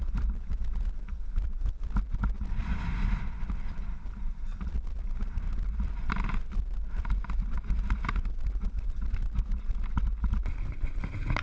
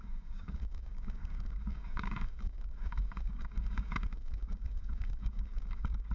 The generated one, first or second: second